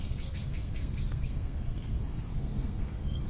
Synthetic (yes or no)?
yes